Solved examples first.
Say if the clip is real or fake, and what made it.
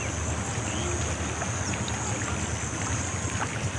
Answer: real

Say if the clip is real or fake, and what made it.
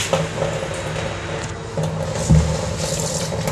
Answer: real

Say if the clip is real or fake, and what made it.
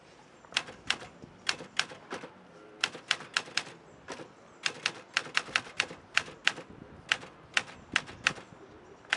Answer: real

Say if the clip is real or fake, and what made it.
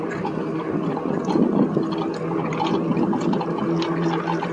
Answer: real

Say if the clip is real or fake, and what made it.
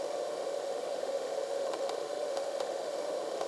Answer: fake, autoencoder, DAC-VAE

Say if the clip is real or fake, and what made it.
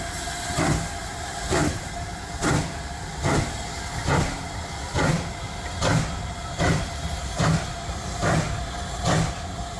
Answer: real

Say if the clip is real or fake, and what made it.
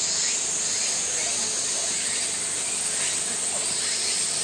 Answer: real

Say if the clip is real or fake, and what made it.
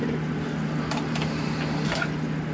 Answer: real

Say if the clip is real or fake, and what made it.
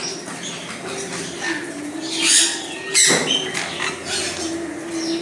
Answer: real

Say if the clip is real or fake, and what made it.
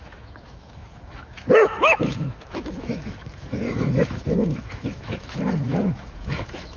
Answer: fake, autoencoder, DAC-VAE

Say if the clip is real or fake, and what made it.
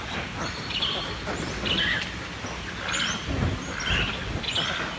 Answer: real